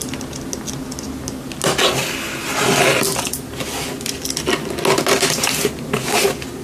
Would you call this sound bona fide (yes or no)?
yes